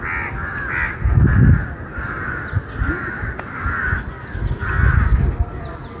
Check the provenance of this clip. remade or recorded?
recorded